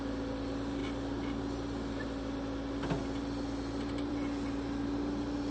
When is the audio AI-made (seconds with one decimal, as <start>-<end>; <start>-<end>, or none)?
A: none